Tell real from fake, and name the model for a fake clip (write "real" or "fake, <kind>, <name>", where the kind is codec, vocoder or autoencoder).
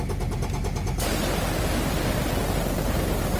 real